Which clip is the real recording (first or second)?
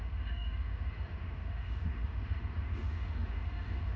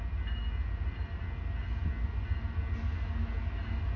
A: second